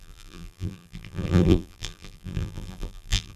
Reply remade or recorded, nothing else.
remade